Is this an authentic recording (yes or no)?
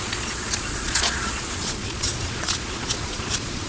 no